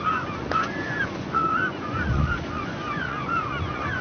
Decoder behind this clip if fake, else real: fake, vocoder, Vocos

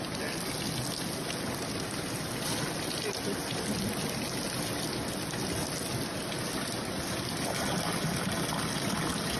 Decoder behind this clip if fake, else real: real